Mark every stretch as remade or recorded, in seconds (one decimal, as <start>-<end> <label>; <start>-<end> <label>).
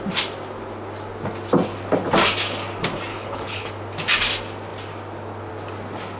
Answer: 0.0-3.1 recorded; 3.1-3.7 remade; 3.7-6.2 recorded